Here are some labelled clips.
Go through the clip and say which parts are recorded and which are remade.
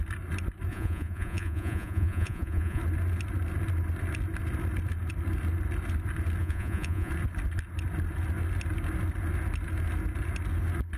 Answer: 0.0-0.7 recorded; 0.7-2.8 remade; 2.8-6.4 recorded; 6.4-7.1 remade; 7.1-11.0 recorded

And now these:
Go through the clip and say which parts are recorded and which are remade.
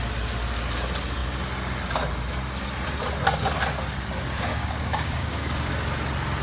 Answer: 0.0-4.5 recorded; 4.5-5.7 remade; 5.7-6.4 recorded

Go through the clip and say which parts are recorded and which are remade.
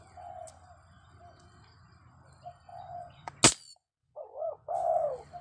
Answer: 0.0-2.7 recorded; 2.7-3.3 remade; 3.3-4.0 recorded; 4.0-4.9 remade; 4.9-5.4 recorded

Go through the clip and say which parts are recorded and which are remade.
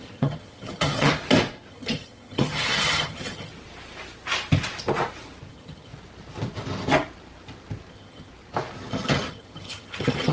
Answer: 0.0-1.1 remade; 1.1-1.7 recorded; 1.7-3.5 remade; 3.5-5.5 recorded; 5.5-5.9 remade; 5.9-7.9 recorded; 7.9-8.3 remade; 8.3-8.9 recorded; 8.9-10.3 remade